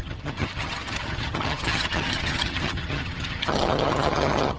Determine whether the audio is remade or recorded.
remade